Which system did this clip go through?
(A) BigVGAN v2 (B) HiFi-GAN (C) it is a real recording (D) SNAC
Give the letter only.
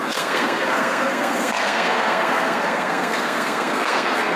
D